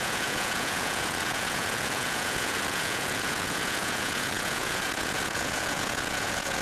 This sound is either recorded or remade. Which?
remade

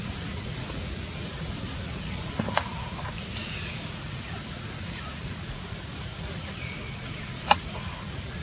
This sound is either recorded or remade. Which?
remade